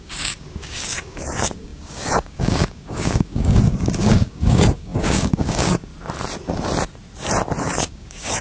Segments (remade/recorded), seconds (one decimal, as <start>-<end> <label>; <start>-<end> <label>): 0.0-5.9 remade; 5.9-7.6 recorded; 7.6-8.4 remade